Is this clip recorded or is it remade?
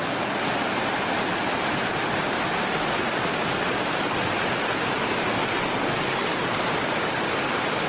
recorded